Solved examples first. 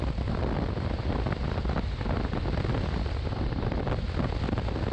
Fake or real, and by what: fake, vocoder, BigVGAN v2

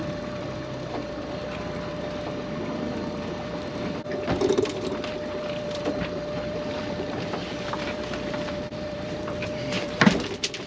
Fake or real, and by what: fake, vocoder, BigVGAN v2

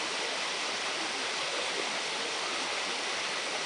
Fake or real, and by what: real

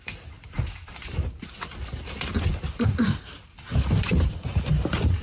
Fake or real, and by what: fake, vocoder, BigVGAN v2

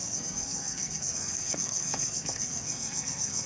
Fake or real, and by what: fake, codec, SNAC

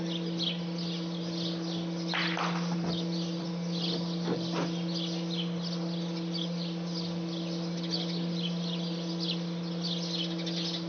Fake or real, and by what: real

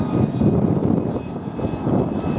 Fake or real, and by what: real